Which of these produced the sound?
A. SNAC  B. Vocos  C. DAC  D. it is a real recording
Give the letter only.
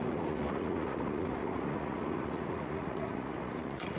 B